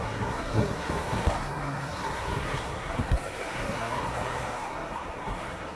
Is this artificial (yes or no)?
yes